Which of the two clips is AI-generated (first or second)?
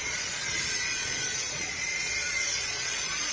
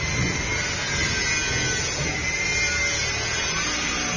first